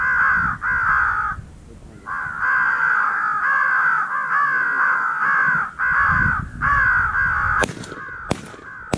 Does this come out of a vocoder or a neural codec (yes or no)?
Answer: no